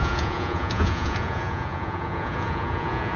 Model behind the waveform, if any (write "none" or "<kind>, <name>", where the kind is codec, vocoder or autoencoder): vocoder, Vocos